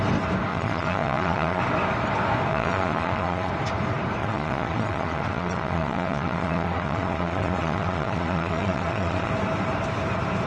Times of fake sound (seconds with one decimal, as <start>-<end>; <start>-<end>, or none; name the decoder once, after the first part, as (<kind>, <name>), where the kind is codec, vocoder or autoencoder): 0.5-1.6 (vocoder, Vocos); 2.5-3.5; 4.2-9.3